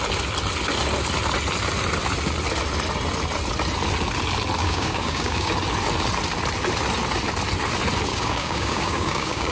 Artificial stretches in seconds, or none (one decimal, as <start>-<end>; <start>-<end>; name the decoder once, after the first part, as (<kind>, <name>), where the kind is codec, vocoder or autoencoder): 4.6-5.5 (codec, DAC); 8.1-9.5